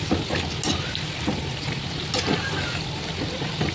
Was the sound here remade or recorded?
recorded